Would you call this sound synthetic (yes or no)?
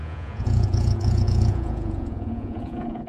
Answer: yes